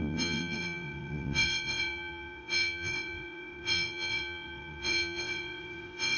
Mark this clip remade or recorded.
remade